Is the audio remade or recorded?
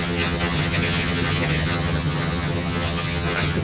remade